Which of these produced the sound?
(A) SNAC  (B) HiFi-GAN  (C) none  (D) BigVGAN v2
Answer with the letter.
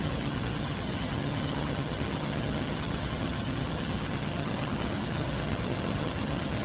B